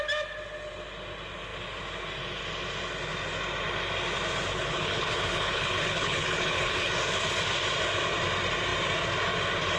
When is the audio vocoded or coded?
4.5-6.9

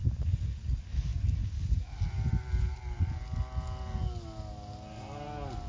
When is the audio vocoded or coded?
none

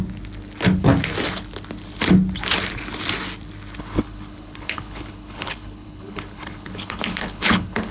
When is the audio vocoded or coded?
3.8-7.9